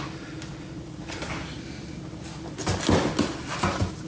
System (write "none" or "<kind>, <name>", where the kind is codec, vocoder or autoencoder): none